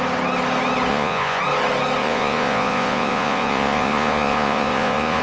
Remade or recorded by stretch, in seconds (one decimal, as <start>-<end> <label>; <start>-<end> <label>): 0.0-0.9 recorded; 0.9-1.4 remade; 1.4-2.0 recorded; 2.0-5.2 remade